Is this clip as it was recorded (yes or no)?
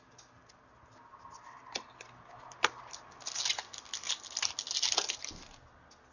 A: yes